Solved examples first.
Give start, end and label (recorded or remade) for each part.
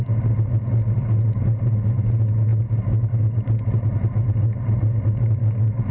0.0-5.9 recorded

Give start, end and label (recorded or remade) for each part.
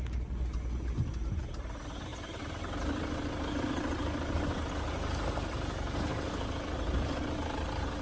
0.0-8.0 recorded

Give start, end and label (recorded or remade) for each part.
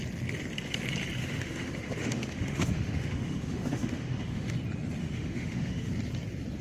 0.0-1.2 recorded; 1.2-4.5 remade; 4.5-5.0 recorded; 5.0-5.9 remade; 5.9-6.6 recorded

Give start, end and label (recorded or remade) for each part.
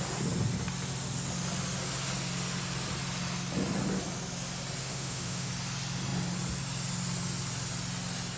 0.0-4.8 recorded; 4.8-5.5 remade; 5.5-8.4 recorded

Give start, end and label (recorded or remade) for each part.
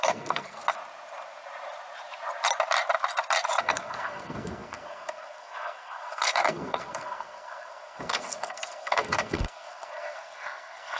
0.0-0.6 remade; 0.6-3.6 recorded; 3.6-11.0 remade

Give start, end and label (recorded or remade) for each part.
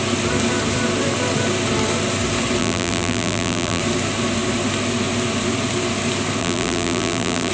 0.0-2.6 recorded; 2.6-3.8 remade; 3.8-6.4 recorded; 6.4-7.5 remade